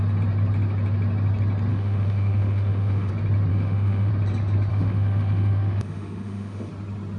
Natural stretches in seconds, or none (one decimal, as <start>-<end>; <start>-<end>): 0.0-1.7; 3.1-3.5; 4.1-4.7; 6.7-7.2

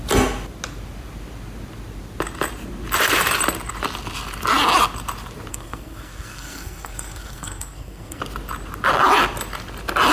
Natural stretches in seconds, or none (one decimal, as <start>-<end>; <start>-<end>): 0.0-5.5; 8.2-10.1

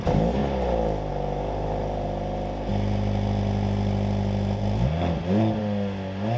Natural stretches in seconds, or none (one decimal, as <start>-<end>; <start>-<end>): 0.0-6.4

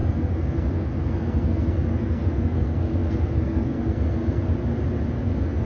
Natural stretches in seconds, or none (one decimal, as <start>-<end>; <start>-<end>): 4.5-5.2

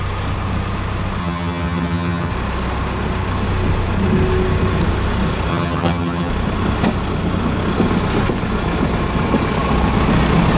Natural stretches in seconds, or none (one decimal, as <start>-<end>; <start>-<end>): 0.0-1.2; 2.3-5.5; 6.3-10.6